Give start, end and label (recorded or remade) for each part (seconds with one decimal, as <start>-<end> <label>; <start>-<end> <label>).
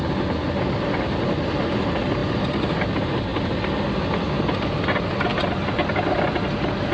0.0-2.2 recorded; 2.2-2.8 remade; 2.8-6.9 recorded